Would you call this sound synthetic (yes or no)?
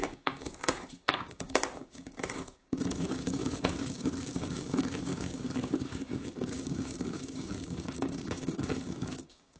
yes